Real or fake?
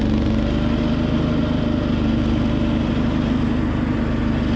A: real